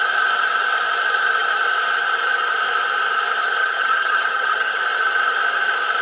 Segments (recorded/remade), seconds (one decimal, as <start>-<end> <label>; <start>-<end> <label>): 0.0-3.6 recorded; 3.6-4.8 remade; 4.8-6.0 recorded